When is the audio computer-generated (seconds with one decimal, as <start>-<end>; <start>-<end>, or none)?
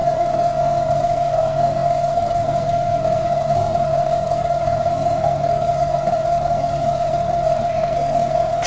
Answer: 0.0-8.7